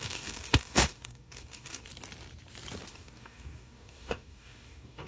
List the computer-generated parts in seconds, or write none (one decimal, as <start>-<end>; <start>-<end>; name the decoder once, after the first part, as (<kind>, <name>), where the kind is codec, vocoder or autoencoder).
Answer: 0.0-1.9 (codec, DAC); 2.9-5.1